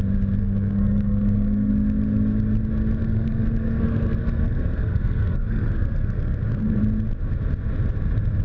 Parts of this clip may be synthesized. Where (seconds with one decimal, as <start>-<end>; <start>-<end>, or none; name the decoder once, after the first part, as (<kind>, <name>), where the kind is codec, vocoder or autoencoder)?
0.4-1.7 (codec, SNAC); 3.0-6.8